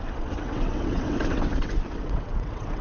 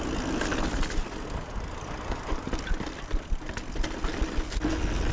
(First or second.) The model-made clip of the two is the first